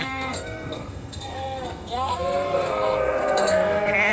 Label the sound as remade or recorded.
remade